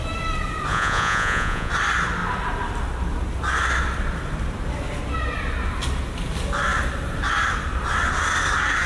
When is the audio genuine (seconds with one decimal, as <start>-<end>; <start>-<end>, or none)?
0.0-0.7; 1.7-8.9